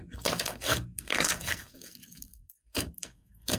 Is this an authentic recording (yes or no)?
no